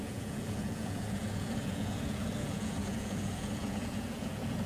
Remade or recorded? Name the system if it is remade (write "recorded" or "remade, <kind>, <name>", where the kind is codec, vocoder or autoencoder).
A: remade, vocoder, Vocos